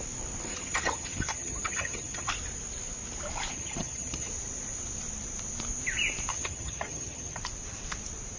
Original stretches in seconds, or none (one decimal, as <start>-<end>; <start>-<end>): 0.0-0.5; 2.3-3.5; 4.3-6.3; 7.4-8.4